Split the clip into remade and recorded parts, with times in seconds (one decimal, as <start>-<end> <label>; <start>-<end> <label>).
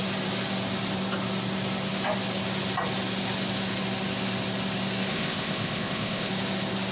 0.0-5.1 recorded; 5.1-6.3 remade; 6.3-6.9 recorded